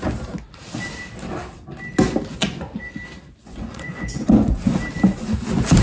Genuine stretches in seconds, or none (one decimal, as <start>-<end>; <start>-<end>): 0.0-2.3; 2.8-3.4; 4.6-5.8